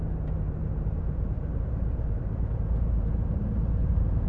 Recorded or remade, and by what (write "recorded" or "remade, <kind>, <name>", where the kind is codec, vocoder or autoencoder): remade, vocoder, BigVGAN v2